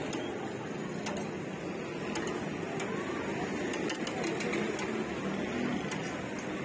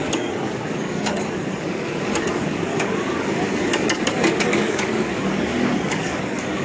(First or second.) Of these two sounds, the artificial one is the second